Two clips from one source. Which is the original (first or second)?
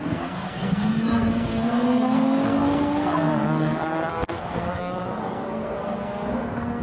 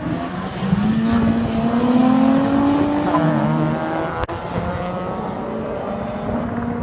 second